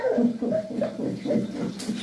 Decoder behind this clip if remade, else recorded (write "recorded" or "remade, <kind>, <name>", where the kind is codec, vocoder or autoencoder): recorded